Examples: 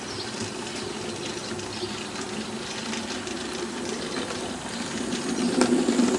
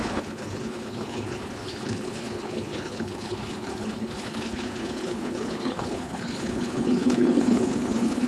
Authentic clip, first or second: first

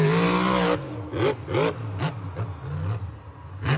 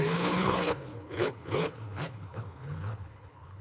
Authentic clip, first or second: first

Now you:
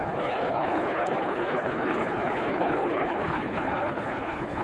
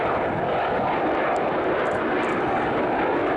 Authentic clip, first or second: second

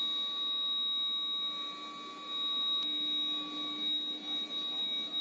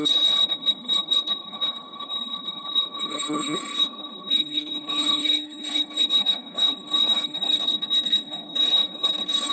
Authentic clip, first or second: first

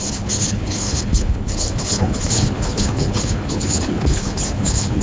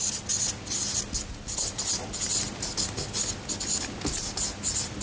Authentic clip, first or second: second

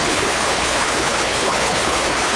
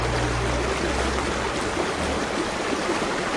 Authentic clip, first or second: second